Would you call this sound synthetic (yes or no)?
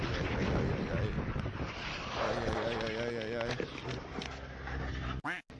no